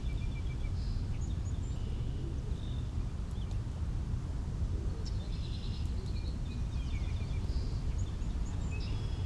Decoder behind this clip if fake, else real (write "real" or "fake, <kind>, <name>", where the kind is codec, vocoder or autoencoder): real